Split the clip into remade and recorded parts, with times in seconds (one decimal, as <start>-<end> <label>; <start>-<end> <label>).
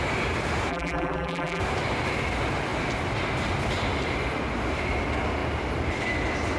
0.0-0.7 recorded; 0.7-1.6 remade; 1.6-6.6 recorded